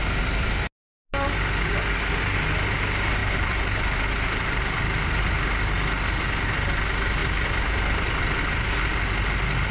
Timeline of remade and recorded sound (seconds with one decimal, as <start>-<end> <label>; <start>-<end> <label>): 0.0-3.2 recorded; 3.2-4.6 remade; 4.6-7.2 recorded; 7.2-8.4 remade; 8.4-9.7 recorded